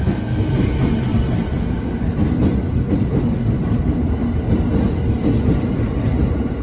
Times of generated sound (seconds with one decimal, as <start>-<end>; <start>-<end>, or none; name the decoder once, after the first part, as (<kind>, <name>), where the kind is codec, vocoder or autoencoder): 1.1-4.4 (vocoder, BigVGAN v2)